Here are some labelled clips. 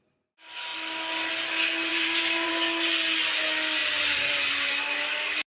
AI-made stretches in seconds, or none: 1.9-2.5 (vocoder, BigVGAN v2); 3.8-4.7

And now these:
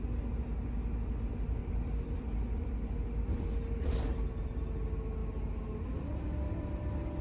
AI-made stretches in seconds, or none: 1.6-4.6 (vocoder, BigVGAN v2)

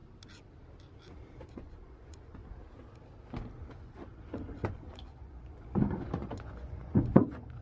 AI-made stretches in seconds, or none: 1.5-2.4 (vocoder, Vocos); 3.7-7.6

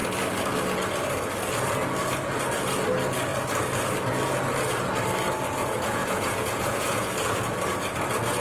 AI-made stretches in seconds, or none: 5.6-7.1 (vocoder, Vocos)

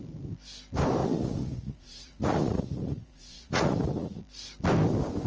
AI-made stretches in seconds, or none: 1.0-4.2 (vocoder, Vocos)

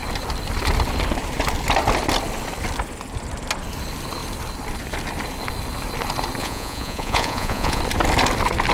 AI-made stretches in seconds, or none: 6.4-7.8 (vocoder, Vocos)